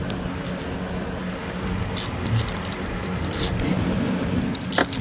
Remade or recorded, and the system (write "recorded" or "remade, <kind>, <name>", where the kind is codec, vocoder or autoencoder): recorded